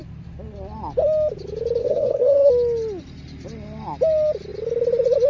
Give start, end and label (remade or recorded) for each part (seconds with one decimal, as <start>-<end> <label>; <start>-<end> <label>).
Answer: 0.0-1.8 recorded; 1.8-2.5 remade; 2.5-5.3 recorded